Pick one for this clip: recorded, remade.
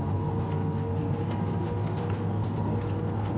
remade